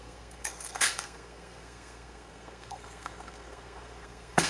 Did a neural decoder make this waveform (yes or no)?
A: yes